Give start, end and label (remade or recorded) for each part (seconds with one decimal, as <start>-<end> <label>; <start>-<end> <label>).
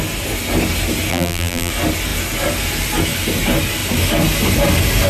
0.0-1.1 recorded; 1.1-1.7 remade; 1.7-5.1 recorded